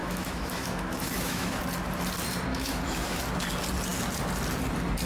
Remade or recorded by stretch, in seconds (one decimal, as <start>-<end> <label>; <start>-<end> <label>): 0.0-1.6 remade; 1.6-2.5 recorded; 2.5-3.2 remade; 3.2-5.1 recorded

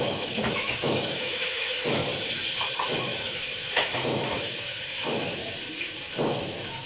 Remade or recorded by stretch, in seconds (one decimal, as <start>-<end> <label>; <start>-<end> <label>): 0.0-2.0 remade; 2.0-3.0 recorded; 3.0-5.4 remade; 5.4-6.3 recorded; 6.3-6.9 remade

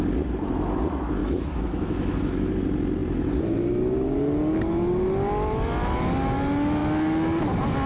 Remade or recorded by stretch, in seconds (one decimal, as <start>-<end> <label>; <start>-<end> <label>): 0.0-1.2 recorded; 1.2-2.5 remade; 2.5-7.9 recorded

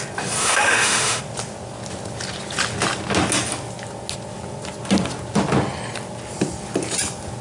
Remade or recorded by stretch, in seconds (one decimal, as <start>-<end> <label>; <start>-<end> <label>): 0.0-0.4 recorded; 0.4-1.2 remade; 1.2-7.4 recorded

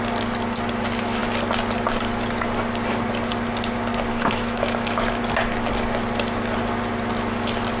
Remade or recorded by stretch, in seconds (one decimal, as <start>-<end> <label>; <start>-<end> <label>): 0.0-4.1 recorded; 4.1-5.2 remade; 5.2-7.8 recorded

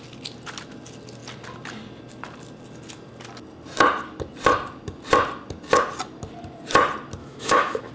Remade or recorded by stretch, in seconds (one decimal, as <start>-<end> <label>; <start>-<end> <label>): 0.0-7.2 recorded; 7.2-7.9 remade

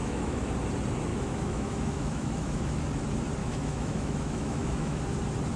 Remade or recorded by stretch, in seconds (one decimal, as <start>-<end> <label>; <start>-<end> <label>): 0.0-0.5 remade; 0.5-1.1 recorded; 1.1-2.8 remade; 2.8-3.4 recorded; 3.4-5.0 remade; 5.0-5.6 recorded

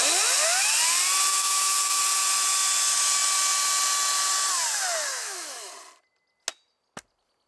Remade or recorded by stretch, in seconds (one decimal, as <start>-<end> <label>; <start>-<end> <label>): 0.0-1.3 recorded; 1.3-2.0 remade; 2.0-5.1 recorded; 5.1-5.7 remade; 5.7-7.5 recorded